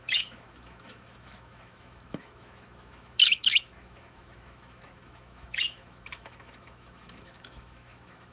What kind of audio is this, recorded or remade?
remade